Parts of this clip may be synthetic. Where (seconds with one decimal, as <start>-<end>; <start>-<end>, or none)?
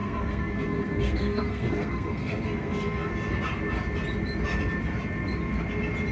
0.0-3.1